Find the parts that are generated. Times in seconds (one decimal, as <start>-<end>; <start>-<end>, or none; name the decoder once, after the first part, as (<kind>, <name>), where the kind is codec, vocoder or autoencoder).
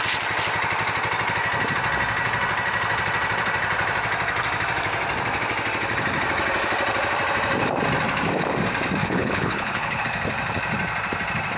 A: 9.0-10.0 (codec, HILCodec)